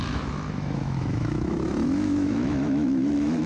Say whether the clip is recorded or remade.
remade